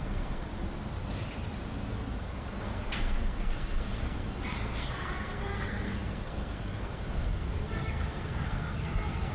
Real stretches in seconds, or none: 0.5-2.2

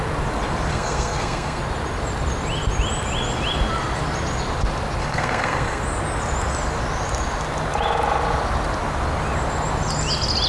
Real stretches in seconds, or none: 0.0-0.7; 1.6-5.0; 5.8-10.5

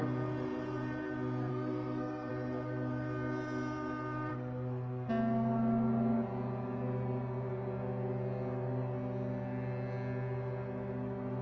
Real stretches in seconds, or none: 0.0-1.5; 2.3-4.3; 5.1-11.4

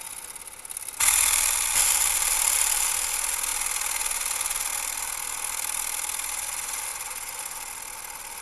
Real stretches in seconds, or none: 0.0-8.4